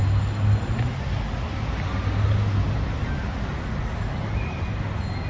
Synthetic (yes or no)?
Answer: no